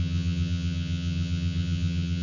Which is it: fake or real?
fake